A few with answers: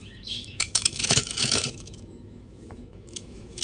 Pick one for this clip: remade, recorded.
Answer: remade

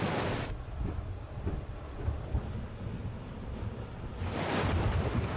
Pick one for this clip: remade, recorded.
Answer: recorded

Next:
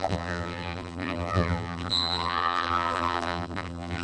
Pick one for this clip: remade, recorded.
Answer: remade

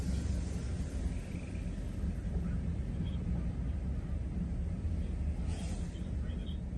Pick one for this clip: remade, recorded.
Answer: recorded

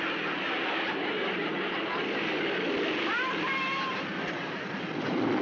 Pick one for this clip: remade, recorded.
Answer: recorded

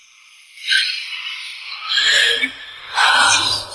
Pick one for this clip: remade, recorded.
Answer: remade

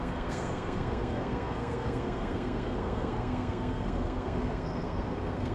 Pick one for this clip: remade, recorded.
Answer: remade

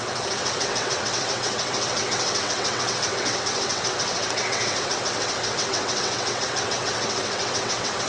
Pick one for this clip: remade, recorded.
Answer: remade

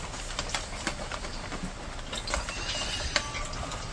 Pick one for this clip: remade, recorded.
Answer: recorded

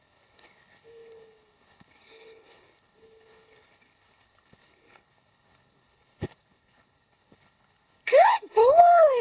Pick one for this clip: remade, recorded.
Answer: remade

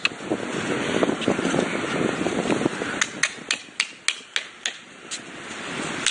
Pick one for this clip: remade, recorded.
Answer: recorded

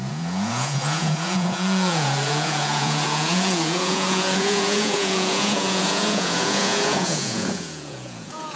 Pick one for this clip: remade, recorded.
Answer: remade